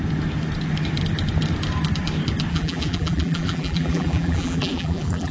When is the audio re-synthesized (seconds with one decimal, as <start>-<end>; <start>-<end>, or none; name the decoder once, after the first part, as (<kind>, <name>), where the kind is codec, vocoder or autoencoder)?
2.5-5.3 (vocoder, BigVGAN v2)